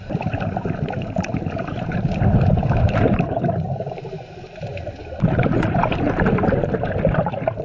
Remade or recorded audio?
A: remade